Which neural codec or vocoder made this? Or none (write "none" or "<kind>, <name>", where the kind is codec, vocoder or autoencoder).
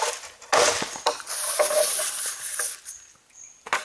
none